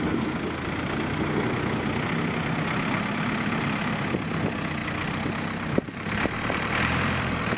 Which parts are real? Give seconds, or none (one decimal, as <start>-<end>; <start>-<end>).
0.0-4.8

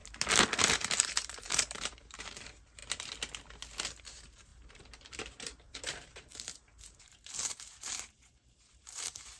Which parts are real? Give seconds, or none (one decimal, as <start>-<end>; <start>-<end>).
0.0-0.6; 2.8-4.0

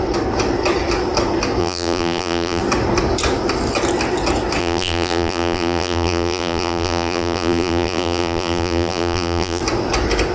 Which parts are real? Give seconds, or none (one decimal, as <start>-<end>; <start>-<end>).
0.0-1.6; 2.6-4.6; 9.6-10.3

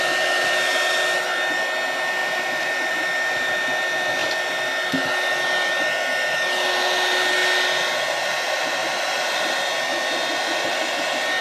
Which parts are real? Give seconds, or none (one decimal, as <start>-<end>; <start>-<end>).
0.0-2.2; 2.7-8.8; 9.5-11.4

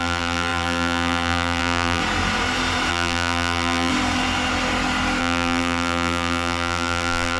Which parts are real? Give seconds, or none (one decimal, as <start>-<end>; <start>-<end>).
2.0-2.9; 3.9-5.2

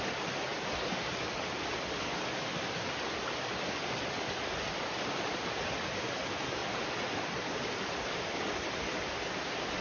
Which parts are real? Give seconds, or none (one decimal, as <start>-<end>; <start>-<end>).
0.0-9.8